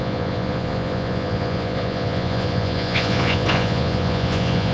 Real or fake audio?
fake